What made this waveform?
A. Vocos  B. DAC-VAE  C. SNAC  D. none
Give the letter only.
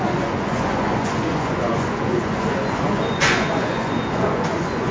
A